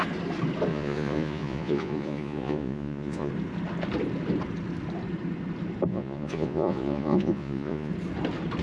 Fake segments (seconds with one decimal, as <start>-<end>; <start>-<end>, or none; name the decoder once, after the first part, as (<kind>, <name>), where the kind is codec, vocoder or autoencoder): 0.7-3.3 (vocoder, Vocos); 5.9-7.9